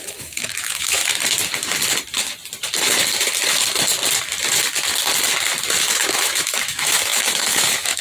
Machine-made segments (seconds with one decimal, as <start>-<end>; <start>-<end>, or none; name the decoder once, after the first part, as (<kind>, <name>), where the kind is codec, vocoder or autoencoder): 0.0-1.0 (autoencoder, DAC-VAE); 5.8-8.0

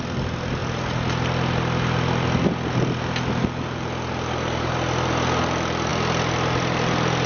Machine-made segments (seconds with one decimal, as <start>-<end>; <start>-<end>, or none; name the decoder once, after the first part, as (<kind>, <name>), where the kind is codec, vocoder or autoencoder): none

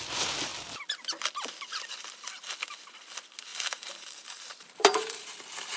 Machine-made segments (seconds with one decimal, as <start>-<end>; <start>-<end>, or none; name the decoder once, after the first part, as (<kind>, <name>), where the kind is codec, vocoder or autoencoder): 3.5-5.3 (vocoder, BigVGAN v2)

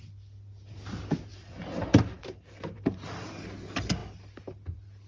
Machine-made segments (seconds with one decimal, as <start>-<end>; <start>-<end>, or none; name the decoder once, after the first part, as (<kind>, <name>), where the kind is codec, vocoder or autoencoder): 1.3-3.3 (vocoder, BigVGAN v2)

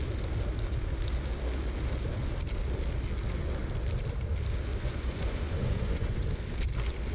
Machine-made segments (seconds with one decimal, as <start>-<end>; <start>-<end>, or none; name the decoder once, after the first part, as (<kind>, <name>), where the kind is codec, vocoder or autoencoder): 4.7-6.2 (vocoder, Vocos)

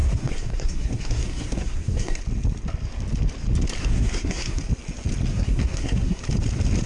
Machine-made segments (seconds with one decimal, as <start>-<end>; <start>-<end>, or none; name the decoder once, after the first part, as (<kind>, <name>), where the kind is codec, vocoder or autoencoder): 0.0-2.2 (codec, SNAC); 3.8-4.6; 5.3-6.2

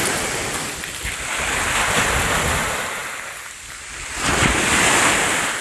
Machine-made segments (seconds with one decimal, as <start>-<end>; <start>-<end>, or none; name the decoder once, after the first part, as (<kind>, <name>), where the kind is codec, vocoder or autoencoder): none